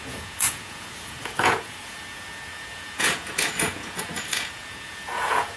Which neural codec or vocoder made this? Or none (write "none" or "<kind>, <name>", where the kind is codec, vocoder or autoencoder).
vocoder, Vocos